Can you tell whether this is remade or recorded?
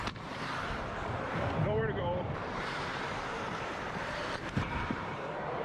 remade